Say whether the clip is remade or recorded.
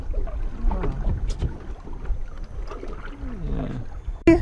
recorded